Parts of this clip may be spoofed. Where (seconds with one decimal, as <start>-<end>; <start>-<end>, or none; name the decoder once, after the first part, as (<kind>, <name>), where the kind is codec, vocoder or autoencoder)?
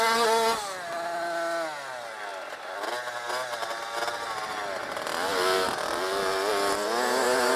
none